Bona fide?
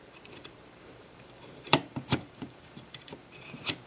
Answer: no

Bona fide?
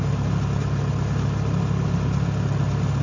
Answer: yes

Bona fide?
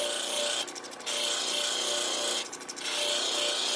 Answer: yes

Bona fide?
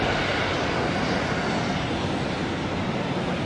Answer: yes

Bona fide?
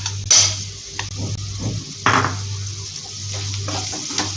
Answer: yes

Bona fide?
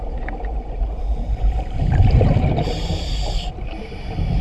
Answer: no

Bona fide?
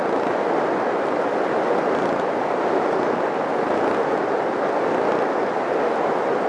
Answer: yes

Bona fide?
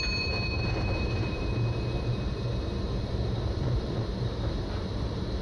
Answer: no